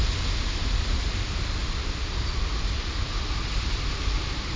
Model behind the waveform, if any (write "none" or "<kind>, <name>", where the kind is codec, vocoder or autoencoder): none